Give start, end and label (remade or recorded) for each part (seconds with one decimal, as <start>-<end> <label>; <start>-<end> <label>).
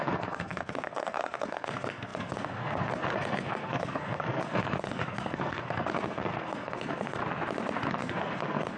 0.0-7.2 remade; 7.2-7.9 recorded; 7.9-8.8 remade